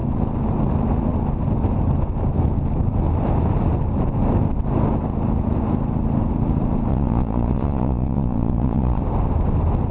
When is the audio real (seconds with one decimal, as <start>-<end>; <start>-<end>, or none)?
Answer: 0.0-6.9; 9.0-9.9